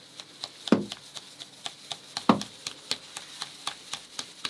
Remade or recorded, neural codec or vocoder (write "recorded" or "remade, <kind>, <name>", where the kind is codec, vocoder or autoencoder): recorded